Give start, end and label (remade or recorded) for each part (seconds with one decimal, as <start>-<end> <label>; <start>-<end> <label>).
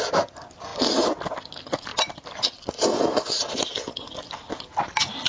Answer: 0.0-1.9 recorded; 1.9-3.4 remade; 3.4-5.3 recorded